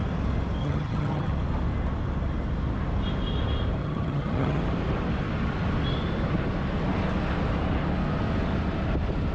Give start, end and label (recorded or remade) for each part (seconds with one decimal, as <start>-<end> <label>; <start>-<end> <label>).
0.0-0.6 recorded; 0.6-1.3 remade; 1.3-3.8 recorded; 3.8-4.6 remade; 4.6-9.3 recorded